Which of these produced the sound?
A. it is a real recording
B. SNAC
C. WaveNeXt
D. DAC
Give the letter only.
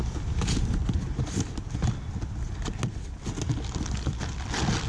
A